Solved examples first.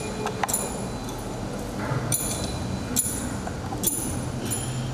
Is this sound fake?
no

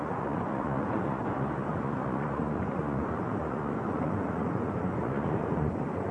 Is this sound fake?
yes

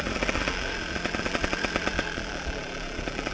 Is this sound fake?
yes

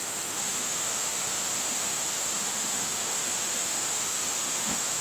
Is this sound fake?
yes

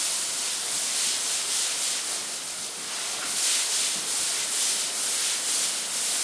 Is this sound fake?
no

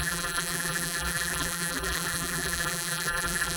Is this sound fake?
yes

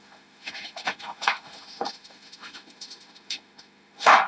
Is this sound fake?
yes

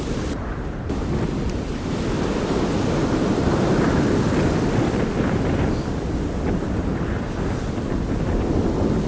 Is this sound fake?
no